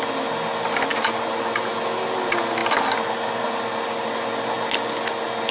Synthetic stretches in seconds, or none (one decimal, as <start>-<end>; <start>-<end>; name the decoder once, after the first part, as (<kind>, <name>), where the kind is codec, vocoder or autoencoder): none